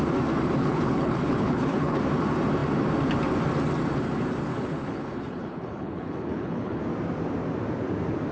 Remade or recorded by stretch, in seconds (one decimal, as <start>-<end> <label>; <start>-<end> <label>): 0.0-0.6 recorded; 0.6-2.0 remade; 2.0-4.5 recorded; 4.5-6.8 remade; 6.8-8.3 recorded